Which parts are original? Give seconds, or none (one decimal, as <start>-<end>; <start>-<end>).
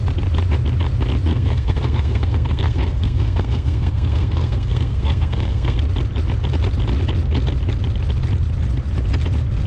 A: 0.0-1.3; 5.8-9.7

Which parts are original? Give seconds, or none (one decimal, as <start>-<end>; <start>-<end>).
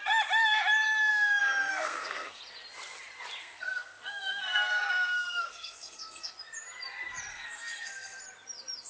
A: 0.0-1.1; 2.4-3.4; 6.3-7.3; 8.2-8.9